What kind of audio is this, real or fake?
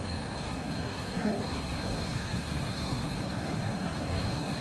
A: fake